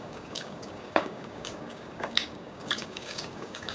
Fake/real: fake